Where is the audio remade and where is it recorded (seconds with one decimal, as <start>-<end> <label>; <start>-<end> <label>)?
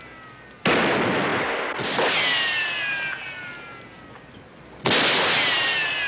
0.0-6.1 recorded